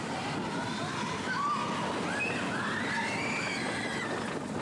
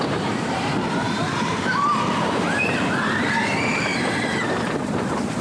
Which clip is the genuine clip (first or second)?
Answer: first